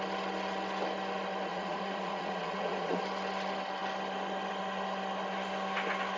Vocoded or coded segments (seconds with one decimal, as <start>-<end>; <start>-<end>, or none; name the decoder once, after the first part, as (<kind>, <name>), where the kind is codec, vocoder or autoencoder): 1.5-3.0 (vocoder, Vocos)